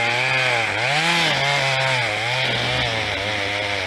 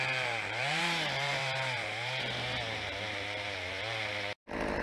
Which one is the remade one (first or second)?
second